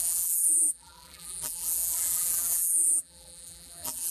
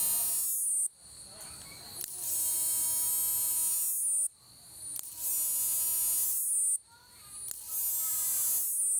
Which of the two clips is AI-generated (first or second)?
first